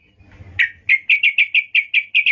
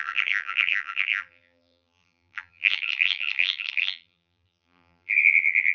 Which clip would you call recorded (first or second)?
first